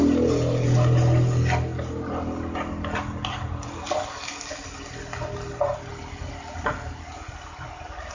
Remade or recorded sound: recorded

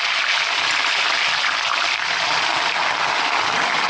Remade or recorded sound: recorded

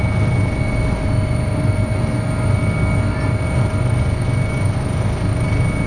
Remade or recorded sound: recorded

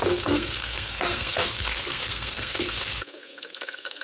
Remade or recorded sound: remade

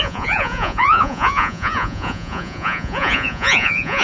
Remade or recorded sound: remade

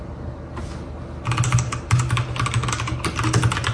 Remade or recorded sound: recorded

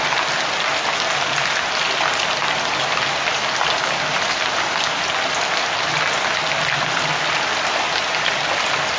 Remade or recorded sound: recorded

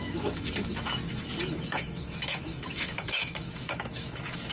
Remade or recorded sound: remade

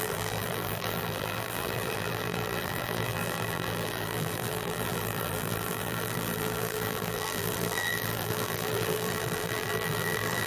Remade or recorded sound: remade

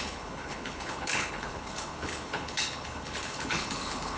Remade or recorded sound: remade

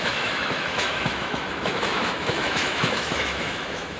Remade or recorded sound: remade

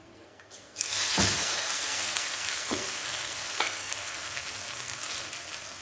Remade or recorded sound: remade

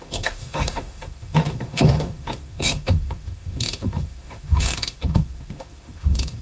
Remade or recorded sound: remade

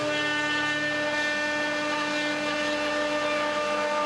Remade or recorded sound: recorded